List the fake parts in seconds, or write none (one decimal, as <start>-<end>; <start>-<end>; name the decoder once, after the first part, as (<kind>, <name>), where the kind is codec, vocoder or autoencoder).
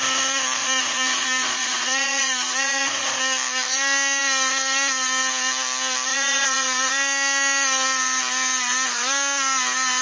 0.6-3.2 (vocoder, Vocos); 6.1-6.9